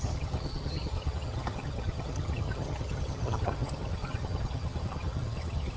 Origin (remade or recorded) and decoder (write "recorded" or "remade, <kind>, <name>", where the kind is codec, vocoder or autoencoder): remade, vocoder, HiFi-GAN